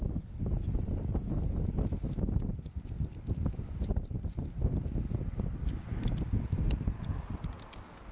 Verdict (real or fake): real